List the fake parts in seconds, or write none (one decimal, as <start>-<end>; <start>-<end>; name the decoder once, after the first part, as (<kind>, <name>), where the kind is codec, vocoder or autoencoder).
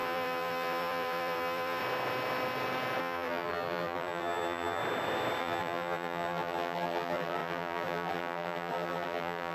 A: 0.0-1.8 (vocoder, BigVGAN v2); 3.0-4.8; 5.4-9.5